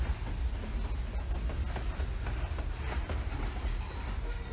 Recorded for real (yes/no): yes